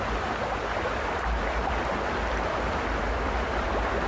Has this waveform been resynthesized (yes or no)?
no